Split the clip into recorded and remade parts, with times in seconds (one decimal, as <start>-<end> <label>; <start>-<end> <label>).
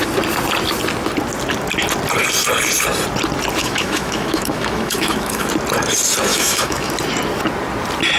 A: 0.0-3.6 recorded; 3.6-5.5 remade; 5.5-6.3 recorded; 6.3-6.9 remade; 6.9-8.2 recorded